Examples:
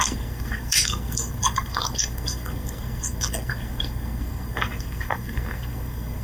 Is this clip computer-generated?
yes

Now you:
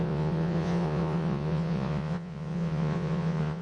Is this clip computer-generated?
yes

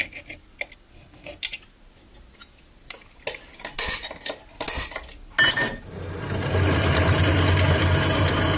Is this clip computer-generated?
no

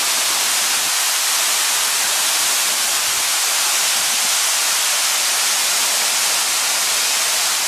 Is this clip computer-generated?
no